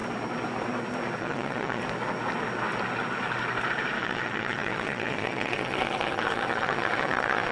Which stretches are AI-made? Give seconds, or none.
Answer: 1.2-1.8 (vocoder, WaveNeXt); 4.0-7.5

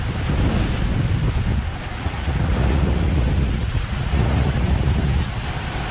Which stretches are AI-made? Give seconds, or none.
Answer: 1.9-5.4 (vocoder, Vocos)